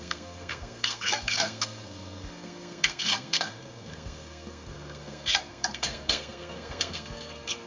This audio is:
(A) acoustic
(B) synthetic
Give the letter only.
B